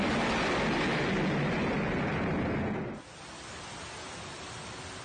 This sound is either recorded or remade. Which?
recorded